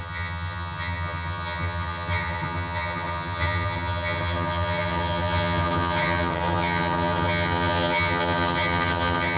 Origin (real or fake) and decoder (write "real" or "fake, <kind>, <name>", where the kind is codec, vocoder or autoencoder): fake, vocoder, HiFi-GAN